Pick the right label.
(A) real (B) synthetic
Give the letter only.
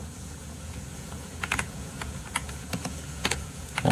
B